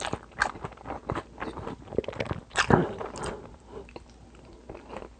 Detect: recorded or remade recorded